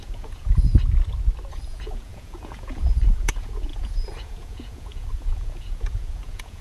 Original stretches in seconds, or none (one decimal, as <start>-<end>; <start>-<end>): 0.7-1.5